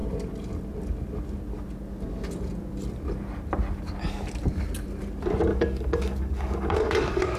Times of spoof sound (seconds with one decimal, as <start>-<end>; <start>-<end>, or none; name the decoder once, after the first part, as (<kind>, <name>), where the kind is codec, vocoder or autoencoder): 5.5-7.4 (codec, DAC)